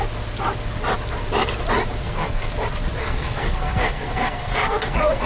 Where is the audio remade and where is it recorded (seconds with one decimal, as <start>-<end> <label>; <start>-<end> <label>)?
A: 0.0-2.0 recorded; 2.0-2.5 remade; 2.5-3.0 recorded; 3.0-5.3 remade